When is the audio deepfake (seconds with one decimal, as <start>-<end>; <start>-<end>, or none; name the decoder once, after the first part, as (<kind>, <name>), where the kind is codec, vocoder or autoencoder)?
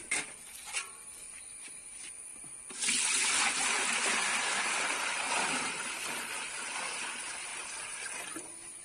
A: none